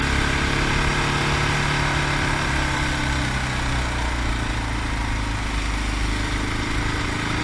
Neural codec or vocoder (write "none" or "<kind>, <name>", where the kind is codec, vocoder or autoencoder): none